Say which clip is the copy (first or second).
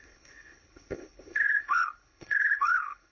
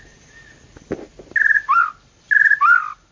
first